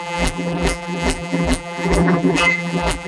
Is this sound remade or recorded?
remade